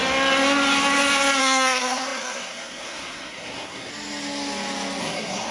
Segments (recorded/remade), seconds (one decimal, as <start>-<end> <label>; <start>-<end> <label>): 0.0-1.4 recorded; 1.4-3.9 remade; 3.9-5.0 recorded; 5.0-5.5 remade